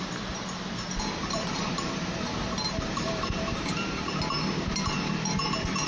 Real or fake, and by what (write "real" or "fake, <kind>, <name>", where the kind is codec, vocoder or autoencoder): fake, vocoder, BigVGAN v2